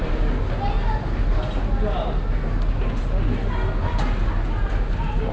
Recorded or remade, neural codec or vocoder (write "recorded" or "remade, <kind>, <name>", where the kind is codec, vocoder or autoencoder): recorded